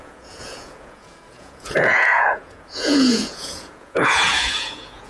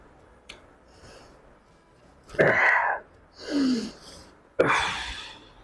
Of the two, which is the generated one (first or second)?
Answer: first